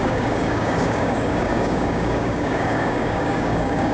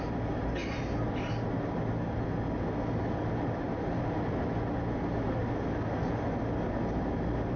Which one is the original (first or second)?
second